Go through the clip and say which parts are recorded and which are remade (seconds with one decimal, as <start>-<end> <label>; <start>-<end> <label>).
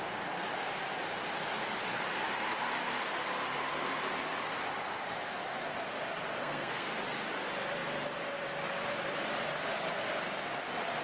0.0-6.4 recorded; 6.4-6.9 remade; 6.9-11.0 recorded